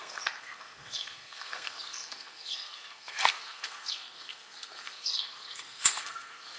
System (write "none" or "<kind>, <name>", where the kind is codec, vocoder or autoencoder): codec, SNAC